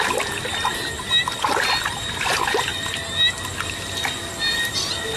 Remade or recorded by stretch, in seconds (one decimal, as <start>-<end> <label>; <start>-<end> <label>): 0.0-5.2 recorded